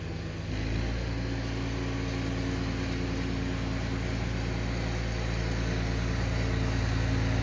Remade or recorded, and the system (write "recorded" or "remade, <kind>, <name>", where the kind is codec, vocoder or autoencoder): recorded